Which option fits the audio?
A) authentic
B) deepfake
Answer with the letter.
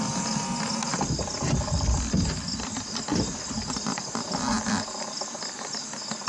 A